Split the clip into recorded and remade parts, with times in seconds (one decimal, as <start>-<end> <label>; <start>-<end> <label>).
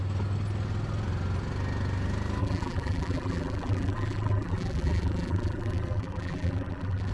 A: 0.0-2.4 recorded; 2.4-7.1 remade